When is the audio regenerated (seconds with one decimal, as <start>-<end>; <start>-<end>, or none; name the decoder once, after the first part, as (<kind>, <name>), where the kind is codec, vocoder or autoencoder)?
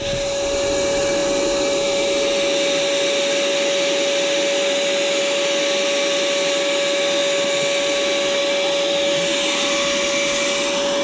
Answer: none